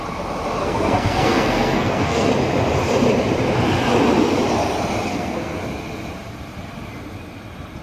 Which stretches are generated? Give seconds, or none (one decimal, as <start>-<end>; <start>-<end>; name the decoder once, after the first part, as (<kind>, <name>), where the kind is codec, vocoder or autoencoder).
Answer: 0.6-2.3 (codec, SNAC); 5.1-5.6